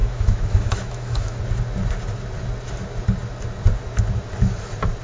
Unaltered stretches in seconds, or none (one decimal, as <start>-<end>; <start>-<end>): 1.4-5.0